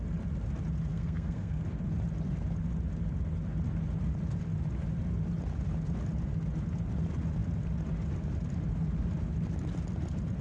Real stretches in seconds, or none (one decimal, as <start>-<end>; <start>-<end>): 0.0-0.9; 1.6-10.4